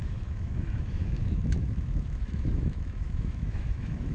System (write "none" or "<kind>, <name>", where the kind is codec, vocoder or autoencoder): autoencoder, DAC-VAE